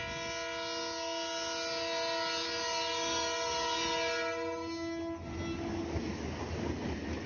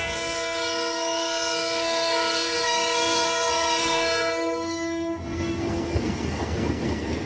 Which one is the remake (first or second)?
second